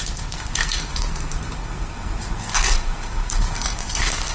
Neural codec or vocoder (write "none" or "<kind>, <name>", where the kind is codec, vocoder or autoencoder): codec, SNAC